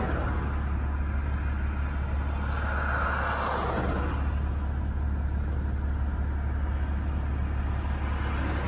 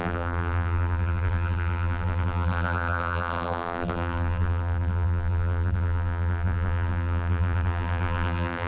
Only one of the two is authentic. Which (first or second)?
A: first